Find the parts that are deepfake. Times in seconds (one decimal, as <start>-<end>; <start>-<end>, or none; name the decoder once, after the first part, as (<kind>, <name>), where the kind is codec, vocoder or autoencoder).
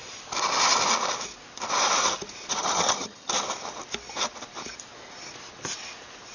2.5-3.3 (vocoder, HiFi-GAN)